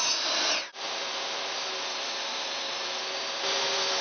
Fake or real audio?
real